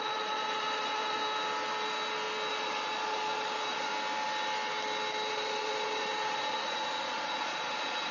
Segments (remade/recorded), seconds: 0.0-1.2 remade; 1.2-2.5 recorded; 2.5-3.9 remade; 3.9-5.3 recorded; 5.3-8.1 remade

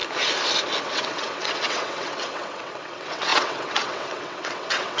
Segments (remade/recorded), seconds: 0.0-0.8 recorded; 0.8-5.0 remade

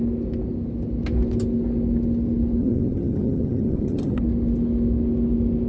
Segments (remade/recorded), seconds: 0.0-2.6 recorded; 2.6-4.2 remade; 4.2-5.7 recorded

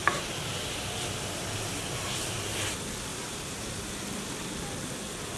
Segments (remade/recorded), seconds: 0.0-3.1 recorded; 3.1-3.9 remade; 3.9-5.4 recorded

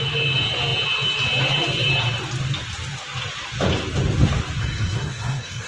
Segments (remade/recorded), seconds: 0.0-4.6 recorded; 4.6-5.7 remade

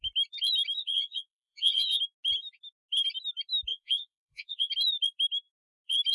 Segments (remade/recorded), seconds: 0.0-0.8 recorded; 0.8-2.0 remade; 2.0-3.7 recorded; 3.7-4.7 remade; 4.7-6.1 recorded

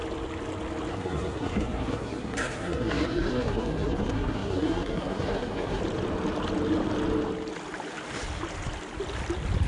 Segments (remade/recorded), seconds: 0.0-0.9 recorded; 0.9-5.8 remade; 5.8-9.7 recorded